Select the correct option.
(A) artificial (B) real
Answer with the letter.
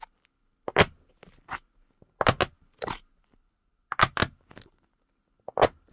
B